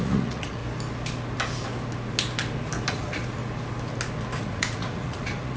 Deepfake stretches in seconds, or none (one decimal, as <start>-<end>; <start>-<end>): 0.0-0.6; 2.9-3.4; 4.4-5.6